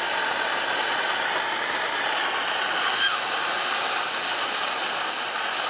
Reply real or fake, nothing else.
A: real